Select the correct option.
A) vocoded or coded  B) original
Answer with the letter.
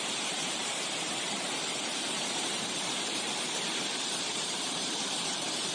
A